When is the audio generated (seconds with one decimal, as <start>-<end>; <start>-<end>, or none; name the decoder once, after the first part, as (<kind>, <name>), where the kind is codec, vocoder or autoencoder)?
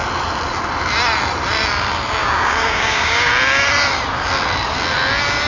2.2-3.3 (codec, DAC)